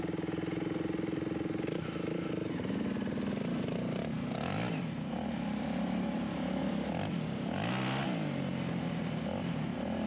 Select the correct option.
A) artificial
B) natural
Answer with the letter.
B